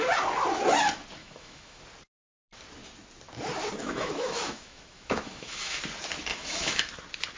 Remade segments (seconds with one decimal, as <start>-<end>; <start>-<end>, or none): 1.2-1.8; 3.8-5.8; 6.3-6.8